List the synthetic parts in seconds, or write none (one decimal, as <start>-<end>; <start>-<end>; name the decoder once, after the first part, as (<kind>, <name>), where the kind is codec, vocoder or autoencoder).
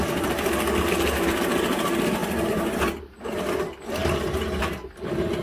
none